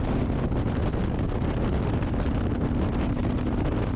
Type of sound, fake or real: real